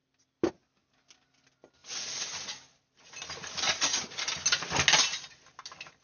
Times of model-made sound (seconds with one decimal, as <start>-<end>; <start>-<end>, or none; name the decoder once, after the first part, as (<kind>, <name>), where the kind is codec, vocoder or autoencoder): none